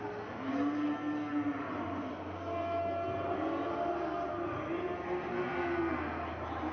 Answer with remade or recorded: recorded